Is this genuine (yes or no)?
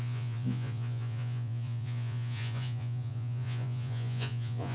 no